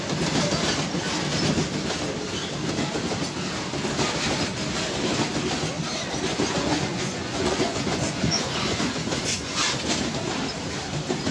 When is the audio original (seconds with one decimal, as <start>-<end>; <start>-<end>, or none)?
0.0-6.3; 9.6-11.3